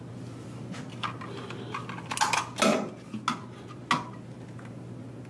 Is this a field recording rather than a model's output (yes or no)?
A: yes